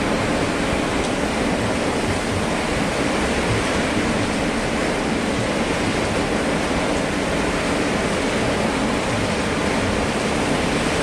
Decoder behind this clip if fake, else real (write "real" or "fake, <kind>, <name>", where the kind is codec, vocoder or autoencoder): real